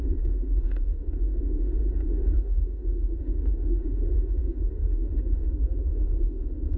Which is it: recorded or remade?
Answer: remade